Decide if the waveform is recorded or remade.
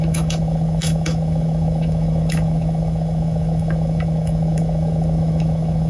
remade